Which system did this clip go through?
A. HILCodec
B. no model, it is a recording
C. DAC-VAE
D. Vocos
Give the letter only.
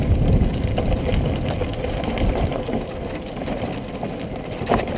B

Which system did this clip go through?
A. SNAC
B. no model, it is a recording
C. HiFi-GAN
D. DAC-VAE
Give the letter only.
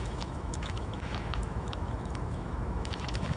D